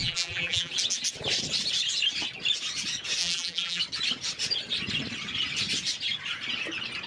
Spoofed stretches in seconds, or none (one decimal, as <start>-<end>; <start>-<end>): 0.0-0.7; 3.2-3.8